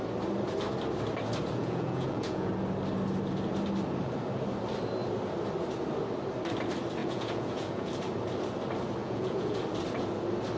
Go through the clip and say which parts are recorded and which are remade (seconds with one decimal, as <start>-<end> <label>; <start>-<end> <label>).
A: 0.0-1.6 recorded; 1.6-2.5 remade; 2.5-7.0 recorded; 7.0-7.9 remade; 7.9-9.0 recorded; 9.0-9.6 remade; 9.6-10.6 recorded